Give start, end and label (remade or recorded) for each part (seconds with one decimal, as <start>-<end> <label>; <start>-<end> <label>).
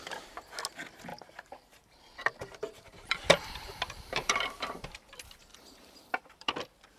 0.0-1.1 recorded; 1.1-5.1 remade; 5.1-5.5 recorded; 5.5-6.5 remade; 6.5-7.0 recorded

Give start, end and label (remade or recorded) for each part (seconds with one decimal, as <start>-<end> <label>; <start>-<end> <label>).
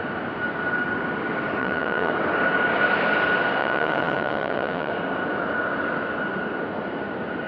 0.0-1.6 recorded; 1.6-2.1 remade; 2.1-3.6 recorded; 3.6-4.9 remade; 4.9-7.5 recorded